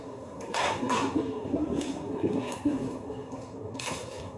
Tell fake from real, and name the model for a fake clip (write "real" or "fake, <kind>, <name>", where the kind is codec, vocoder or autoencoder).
fake, codec, SNAC